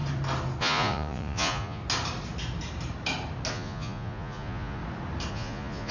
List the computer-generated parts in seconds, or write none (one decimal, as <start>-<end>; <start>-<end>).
0.6-1.8; 3.5-4.8; 5.3-5.9